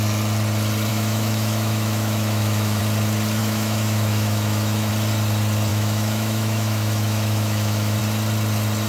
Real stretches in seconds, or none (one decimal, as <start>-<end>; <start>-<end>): 0.0-0.9; 2.8-3.4; 4.9-5.7; 8.0-8.9